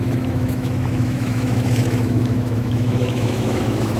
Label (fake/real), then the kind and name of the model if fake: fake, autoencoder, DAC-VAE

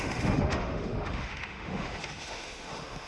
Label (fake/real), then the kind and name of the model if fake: fake, autoencoder, DAC-VAE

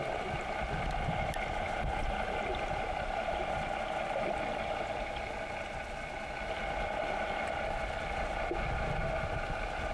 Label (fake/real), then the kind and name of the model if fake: real